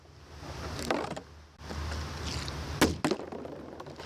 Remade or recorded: recorded